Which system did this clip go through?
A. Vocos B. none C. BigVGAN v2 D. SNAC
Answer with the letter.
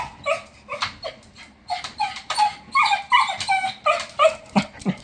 B